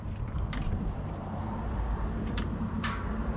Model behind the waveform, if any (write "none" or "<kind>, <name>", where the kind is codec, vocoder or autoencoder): vocoder, BigVGAN v2